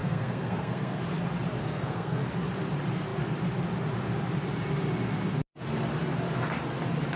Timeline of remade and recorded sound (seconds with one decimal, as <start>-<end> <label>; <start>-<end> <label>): 0.0-1.0 remade; 1.0-1.6 recorded; 1.6-2.2 remade; 2.2-7.2 recorded